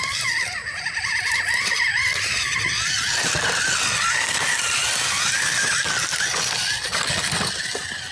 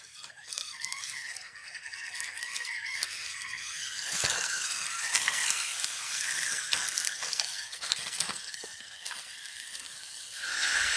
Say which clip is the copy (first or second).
second